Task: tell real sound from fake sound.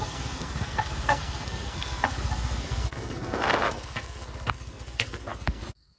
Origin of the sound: fake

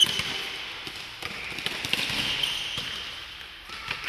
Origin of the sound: real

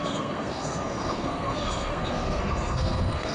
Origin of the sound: fake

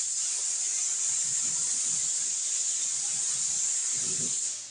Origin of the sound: real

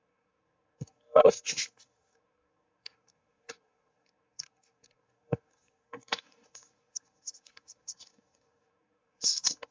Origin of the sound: fake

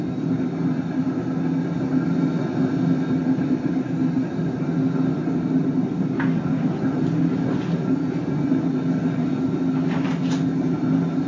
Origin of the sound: real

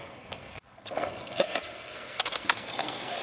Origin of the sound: fake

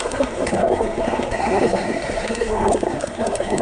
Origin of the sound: fake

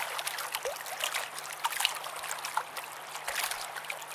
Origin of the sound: real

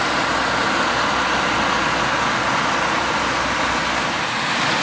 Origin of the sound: real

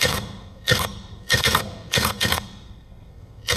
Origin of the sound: fake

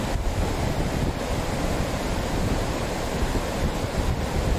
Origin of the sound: real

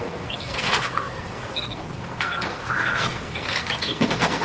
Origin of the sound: fake